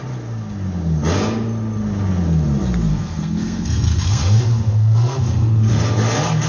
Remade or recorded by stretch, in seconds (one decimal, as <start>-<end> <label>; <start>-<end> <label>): 0.0-2.9 recorded; 2.9-5.7 remade; 5.7-6.5 recorded